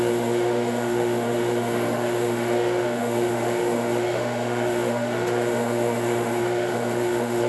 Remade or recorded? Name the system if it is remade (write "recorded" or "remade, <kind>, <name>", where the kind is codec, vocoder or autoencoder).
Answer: remade, autoencoder, DAC-VAE